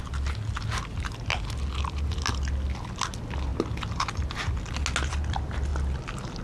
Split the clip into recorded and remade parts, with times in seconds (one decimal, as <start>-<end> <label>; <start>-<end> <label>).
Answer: 0.0-6.4 recorded